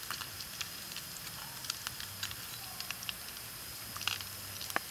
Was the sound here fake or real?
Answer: real